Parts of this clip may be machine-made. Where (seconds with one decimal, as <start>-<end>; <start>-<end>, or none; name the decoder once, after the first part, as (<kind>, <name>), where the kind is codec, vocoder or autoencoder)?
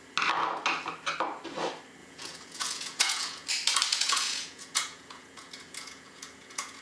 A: 2.0-3.5 (vocoder, Vocos); 3.9-6.8